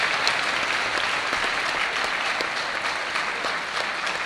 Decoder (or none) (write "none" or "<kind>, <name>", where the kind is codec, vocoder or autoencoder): none